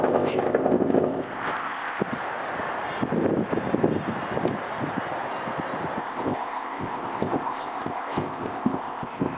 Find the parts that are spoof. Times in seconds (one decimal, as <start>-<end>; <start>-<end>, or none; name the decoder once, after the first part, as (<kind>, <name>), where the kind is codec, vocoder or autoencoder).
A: 0.0-2.0 (codec, ZipCodec); 6.0-9.4